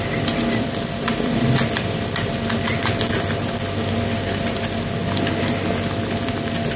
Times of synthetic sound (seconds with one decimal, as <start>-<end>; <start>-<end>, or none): none